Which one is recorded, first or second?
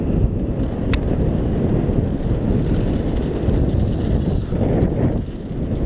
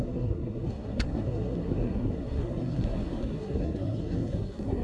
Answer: first